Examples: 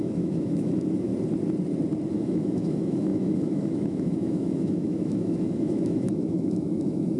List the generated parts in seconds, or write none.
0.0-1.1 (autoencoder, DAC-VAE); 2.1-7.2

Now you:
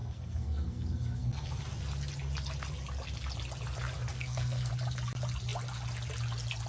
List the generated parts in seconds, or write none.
0.0-1.6 (codec, SNAC); 4.1-4.7

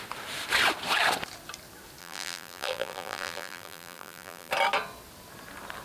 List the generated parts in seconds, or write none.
2.0-4.5 (vocoder, BigVGAN v2)

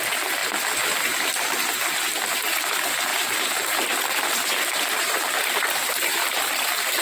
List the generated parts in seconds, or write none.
3.1-6.4 (vocoder, BigVGAN v2)